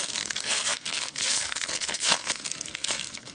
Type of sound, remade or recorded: remade